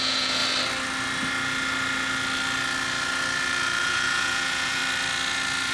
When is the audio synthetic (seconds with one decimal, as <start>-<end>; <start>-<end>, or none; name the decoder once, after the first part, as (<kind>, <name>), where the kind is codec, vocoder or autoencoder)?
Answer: 0.0-0.4 (vocoder, Vocos); 3.8-4.8